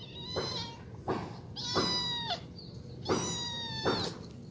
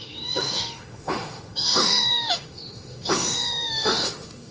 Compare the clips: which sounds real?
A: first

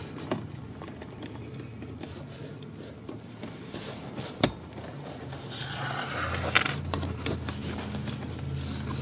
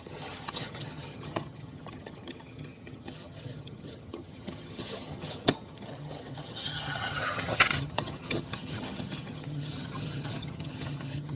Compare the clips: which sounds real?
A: first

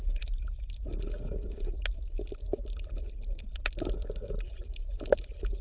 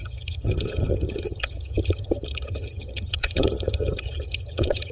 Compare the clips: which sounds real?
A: first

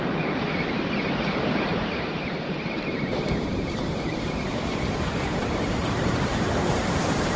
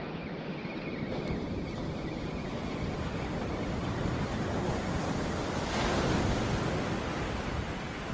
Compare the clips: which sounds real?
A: second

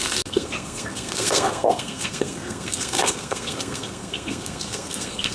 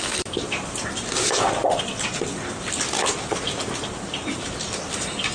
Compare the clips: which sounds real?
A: second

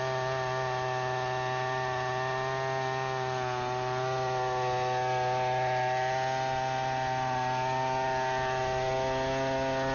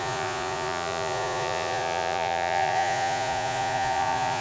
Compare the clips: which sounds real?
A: first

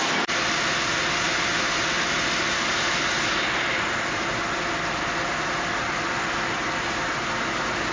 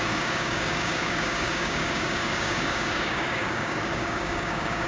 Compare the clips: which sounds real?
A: first